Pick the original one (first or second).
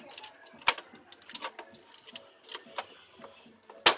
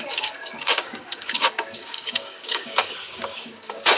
first